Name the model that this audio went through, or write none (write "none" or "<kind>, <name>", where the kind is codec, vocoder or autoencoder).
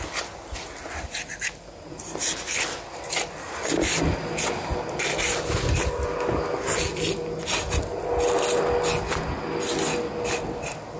none